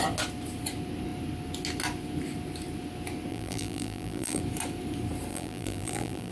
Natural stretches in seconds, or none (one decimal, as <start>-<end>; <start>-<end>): 0.0-3.3; 4.4-5.3